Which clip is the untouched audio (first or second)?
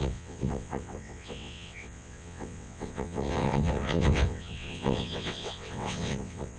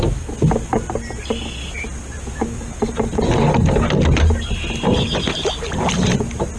second